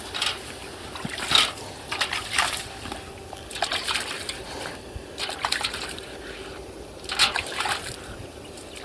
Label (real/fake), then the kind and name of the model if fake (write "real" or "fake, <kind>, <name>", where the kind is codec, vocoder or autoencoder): real